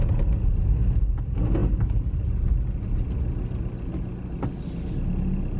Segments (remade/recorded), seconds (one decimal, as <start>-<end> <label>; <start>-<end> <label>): 0.0-5.6 recorded